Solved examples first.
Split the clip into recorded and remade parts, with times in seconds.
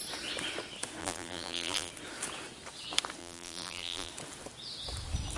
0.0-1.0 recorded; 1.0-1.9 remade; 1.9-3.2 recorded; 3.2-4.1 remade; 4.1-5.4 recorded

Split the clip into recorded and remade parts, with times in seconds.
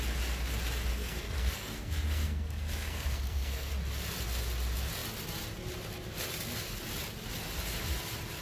0.0-0.9 recorded; 0.9-3.7 remade; 3.7-8.4 recorded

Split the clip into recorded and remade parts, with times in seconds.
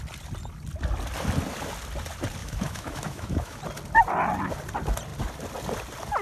0.0-2.4 recorded; 2.4-3.6 remade; 3.6-6.2 recorded